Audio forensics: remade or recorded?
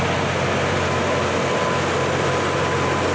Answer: recorded